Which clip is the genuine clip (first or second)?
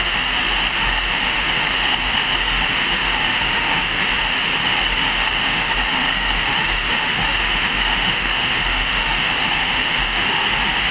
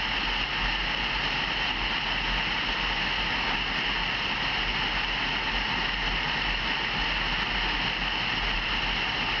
second